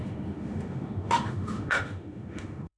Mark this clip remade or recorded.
remade